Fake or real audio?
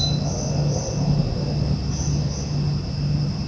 real